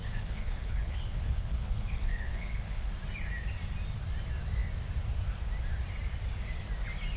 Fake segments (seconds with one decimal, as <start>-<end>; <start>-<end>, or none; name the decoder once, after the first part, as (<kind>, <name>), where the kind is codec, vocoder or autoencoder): 0.0-2.9 (codec, HILCodec)